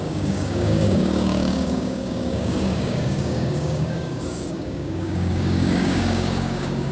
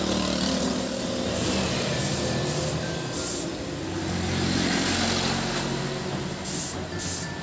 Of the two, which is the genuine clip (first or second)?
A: second